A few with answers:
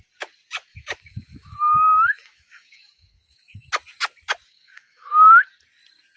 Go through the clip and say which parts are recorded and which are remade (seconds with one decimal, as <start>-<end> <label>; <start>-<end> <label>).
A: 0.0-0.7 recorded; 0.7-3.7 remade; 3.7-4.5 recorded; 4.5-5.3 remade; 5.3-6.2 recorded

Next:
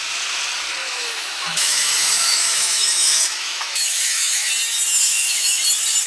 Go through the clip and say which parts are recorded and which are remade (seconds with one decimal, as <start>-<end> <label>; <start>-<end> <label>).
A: 0.0-0.8 recorded; 0.8-4.5 remade; 4.5-5.1 recorded; 5.1-5.6 remade; 5.6-6.1 recorded

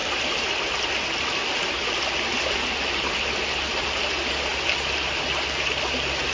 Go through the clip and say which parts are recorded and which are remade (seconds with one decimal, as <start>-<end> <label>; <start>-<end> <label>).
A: 0.0-6.3 recorded

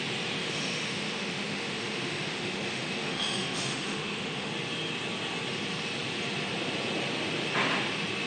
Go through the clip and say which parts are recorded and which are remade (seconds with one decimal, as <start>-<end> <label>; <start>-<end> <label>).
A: 0.0-0.4 recorded; 0.4-4.5 remade; 4.5-8.3 recorded